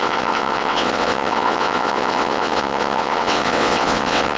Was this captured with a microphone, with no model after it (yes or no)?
no